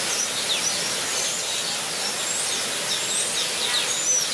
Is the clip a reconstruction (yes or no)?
no